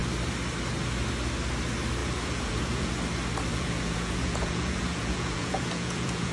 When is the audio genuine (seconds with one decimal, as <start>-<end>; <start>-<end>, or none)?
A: 0.0-2.0; 2.9-3.5